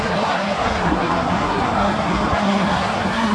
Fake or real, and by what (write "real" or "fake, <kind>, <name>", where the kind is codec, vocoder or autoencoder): fake, codec, SNAC